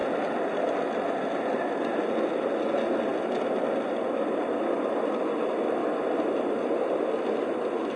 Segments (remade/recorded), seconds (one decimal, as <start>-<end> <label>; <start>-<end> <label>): 0.0-8.0 recorded